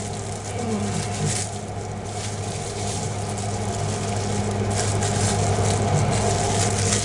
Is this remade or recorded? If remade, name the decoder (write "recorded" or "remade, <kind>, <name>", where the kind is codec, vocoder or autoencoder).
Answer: recorded